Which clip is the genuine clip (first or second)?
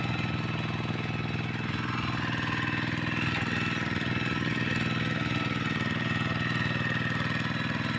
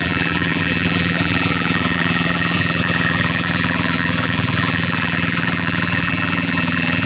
first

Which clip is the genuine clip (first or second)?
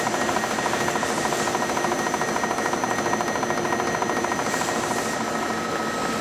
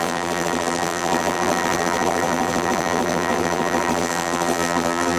first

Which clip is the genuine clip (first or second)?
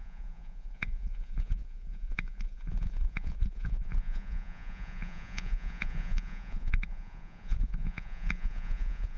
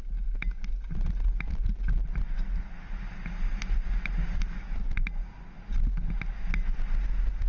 second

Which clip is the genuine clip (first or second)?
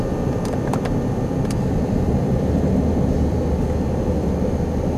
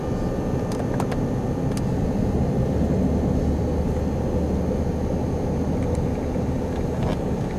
second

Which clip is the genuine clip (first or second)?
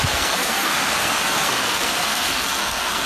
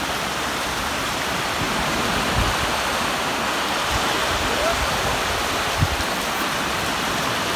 second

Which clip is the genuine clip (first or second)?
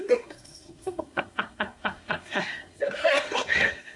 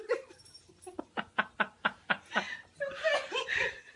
second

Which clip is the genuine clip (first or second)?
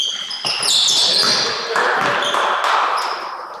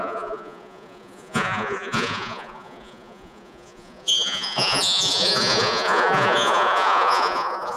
first